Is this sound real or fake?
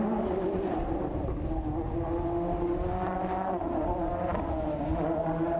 real